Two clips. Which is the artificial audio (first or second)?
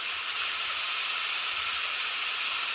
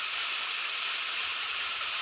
second